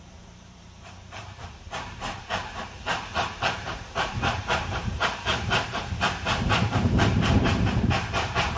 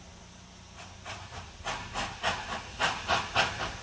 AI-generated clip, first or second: first